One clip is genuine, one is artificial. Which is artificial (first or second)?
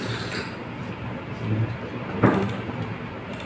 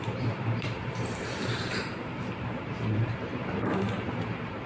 second